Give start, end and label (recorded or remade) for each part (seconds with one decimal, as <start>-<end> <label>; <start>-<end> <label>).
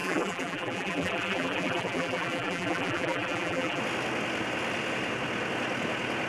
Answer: 0.0-3.8 remade; 3.8-6.3 recorded